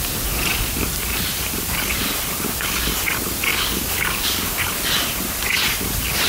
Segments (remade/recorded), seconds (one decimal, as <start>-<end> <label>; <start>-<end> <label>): 0.0-3.5 recorded; 3.5-4.6 remade; 4.6-6.3 recorded